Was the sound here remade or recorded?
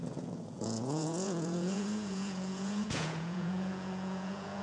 remade